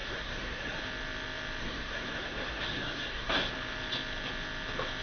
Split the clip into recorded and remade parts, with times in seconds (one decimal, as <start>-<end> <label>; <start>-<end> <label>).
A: 0.0-0.8 remade; 0.8-1.6 recorded; 1.6-3.5 remade; 3.5-5.0 recorded